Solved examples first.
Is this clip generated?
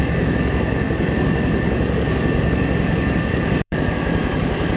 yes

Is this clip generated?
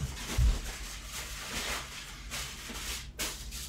no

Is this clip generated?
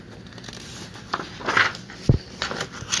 no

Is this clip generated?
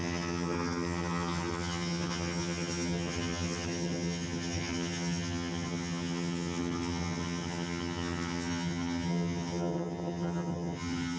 yes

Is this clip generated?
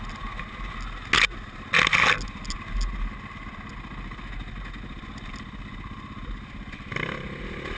no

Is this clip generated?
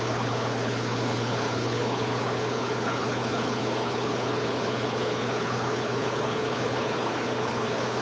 yes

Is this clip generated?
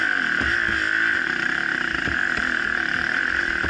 no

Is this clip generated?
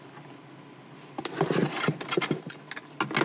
no